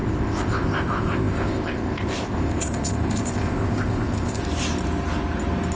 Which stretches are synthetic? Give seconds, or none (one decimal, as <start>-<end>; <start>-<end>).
0.0-4.4